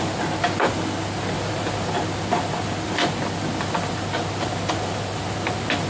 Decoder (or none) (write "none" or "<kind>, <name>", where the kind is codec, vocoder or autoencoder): none